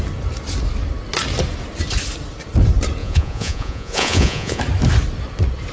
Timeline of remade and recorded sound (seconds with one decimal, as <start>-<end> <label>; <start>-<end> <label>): 0.0-3.0 recorded; 3.0-4.6 remade; 4.6-5.7 recorded